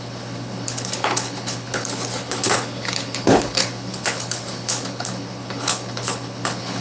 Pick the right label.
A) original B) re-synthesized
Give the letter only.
B